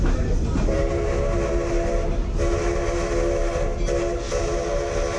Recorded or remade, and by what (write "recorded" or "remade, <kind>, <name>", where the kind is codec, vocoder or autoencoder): recorded